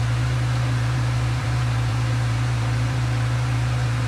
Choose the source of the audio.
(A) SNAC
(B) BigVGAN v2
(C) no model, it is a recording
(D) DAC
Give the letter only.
B